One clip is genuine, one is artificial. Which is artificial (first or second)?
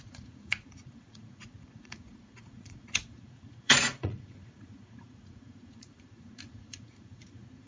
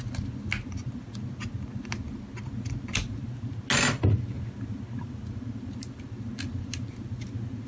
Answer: first